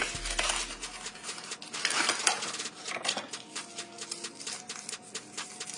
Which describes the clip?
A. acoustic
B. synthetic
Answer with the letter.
A